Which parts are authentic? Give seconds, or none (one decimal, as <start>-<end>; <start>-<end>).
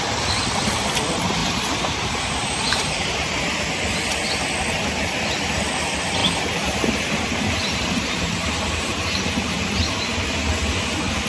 0.0-1.4; 3.5-6.2; 10.3-11.3